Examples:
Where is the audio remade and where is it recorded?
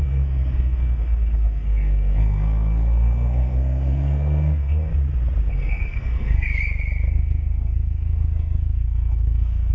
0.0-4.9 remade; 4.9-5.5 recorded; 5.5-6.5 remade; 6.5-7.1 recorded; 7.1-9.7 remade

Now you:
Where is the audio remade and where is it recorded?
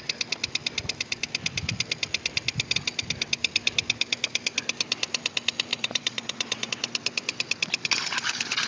0.0-5.7 recorded; 5.7-6.7 remade; 6.7-8.7 recorded